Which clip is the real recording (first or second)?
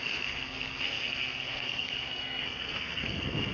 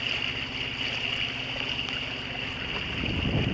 second